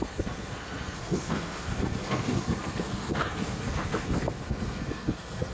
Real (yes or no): no